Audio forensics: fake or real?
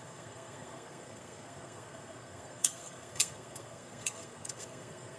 fake